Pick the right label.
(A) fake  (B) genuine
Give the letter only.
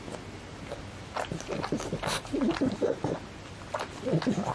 B